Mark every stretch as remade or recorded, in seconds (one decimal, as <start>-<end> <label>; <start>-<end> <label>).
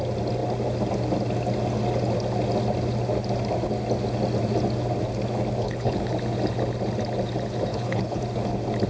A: 0.0-5.6 recorded; 5.6-6.1 remade; 6.1-7.7 recorded; 7.7-8.2 remade; 8.2-8.9 recorded